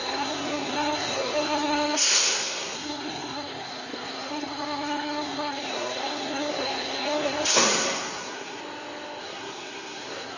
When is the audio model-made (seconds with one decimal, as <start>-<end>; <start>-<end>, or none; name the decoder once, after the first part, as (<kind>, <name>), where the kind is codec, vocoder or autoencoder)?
0.0-8.6 (codec, SNAC); 9.2-10.4